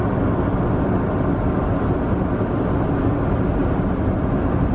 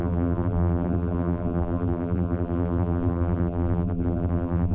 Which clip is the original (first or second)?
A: first